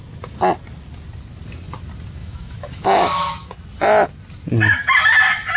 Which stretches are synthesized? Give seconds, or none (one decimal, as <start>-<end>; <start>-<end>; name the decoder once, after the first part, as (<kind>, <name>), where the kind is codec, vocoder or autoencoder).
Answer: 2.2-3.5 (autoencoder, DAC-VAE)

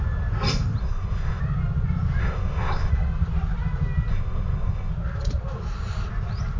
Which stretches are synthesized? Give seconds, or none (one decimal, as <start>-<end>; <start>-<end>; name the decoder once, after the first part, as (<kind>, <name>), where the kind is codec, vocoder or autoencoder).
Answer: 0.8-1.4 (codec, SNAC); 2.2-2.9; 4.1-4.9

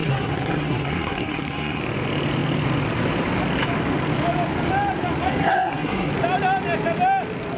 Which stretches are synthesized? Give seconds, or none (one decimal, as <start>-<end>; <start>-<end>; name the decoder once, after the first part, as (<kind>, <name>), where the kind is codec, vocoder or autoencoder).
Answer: 0.0-1.8 (codec, SNAC); 5.4-6.1